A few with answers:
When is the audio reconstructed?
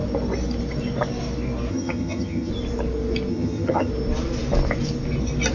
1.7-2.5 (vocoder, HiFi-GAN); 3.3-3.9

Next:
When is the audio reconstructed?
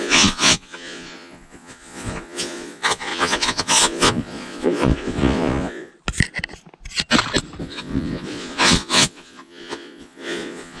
0.0-5.9 (vocoder, Vocos); 7.6-10.8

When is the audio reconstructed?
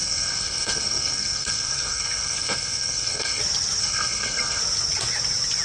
0.0-3.4 (codec, SNAC); 3.8-4.6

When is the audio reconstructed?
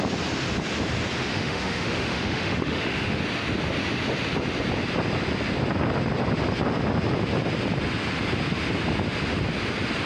1.3-3.2 (autoencoder, DAC-VAE)